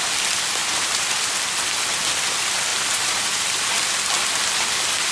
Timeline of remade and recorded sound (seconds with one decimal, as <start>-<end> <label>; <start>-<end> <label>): 0.0-0.6 recorded; 0.6-1.3 remade; 1.3-2.7 recorded; 2.7-3.7 remade; 3.7-5.1 recorded